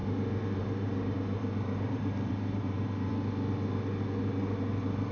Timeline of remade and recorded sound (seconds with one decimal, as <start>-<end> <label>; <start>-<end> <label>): 0.0-3.1 remade; 3.1-5.1 recorded